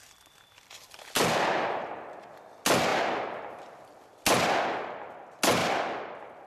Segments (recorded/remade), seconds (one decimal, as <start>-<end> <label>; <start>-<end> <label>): 0.0-6.5 recorded